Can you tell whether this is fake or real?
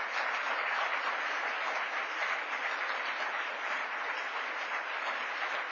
real